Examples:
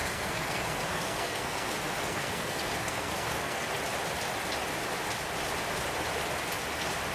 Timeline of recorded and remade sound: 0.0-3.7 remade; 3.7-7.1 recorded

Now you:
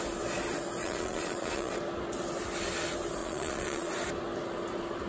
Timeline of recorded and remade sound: 0.0-0.8 recorded; 0.8-1.7 remade; 1.7-3.2 recorded; 3.2-3.9 remade; 3.9-5.1 recorded